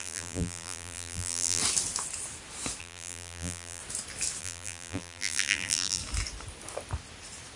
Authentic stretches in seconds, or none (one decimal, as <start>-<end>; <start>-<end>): 1.6-2.8; 3.8-4.4; 6.0-7.6